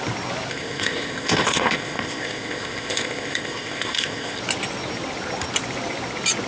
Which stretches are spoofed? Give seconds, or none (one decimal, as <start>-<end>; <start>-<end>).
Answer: 0.5-4.4